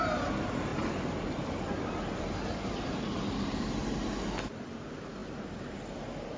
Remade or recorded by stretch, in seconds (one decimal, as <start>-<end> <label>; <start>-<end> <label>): 0.0-6.4 recorded